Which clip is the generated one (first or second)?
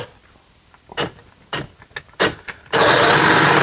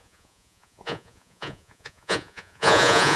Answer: second